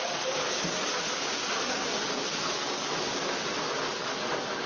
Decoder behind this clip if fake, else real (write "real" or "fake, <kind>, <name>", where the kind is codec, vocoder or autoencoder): fake, codec, DAC